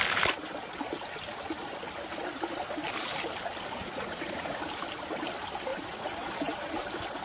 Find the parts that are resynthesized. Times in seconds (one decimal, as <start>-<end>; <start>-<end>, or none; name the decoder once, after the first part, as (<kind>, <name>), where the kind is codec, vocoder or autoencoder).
3.8-4.6 (vocoder, Vocos); 5.7-6.3